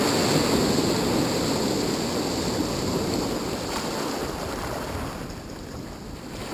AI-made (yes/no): no